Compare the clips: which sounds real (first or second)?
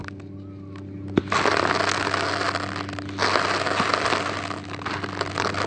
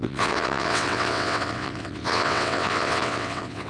first